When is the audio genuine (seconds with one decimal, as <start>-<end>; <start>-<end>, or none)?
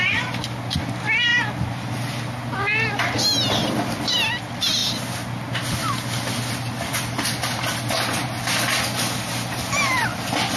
0.0-10.6